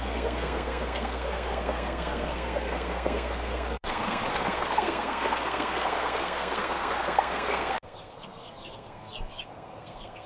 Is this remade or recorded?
remade